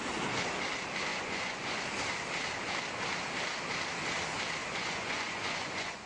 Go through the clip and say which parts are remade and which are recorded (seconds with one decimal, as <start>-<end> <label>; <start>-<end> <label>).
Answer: 0.0-1.1 recorded; 1.1-1.8 remade; 1.8-4.6 recorded; 4.6-6.1 remade